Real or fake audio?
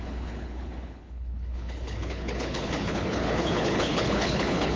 fake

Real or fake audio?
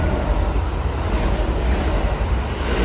real